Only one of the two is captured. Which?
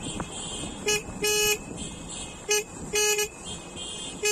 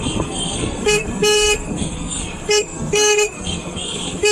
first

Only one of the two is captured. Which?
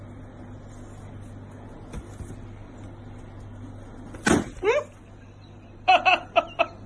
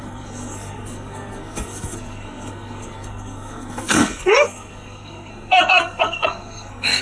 first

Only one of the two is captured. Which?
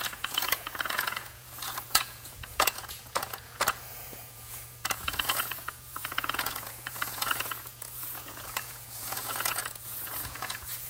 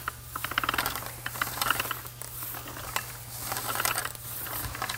second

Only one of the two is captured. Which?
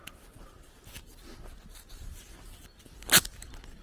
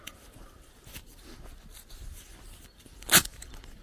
first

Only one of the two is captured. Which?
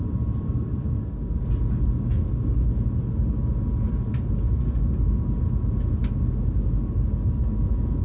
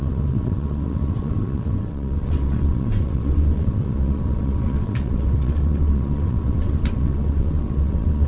first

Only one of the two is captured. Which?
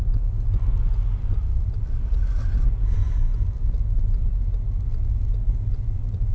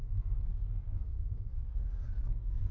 first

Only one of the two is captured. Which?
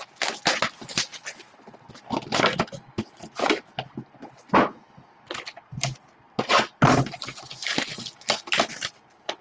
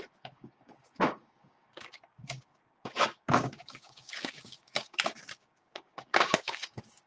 first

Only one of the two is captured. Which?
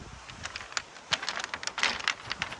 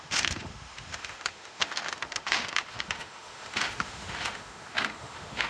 first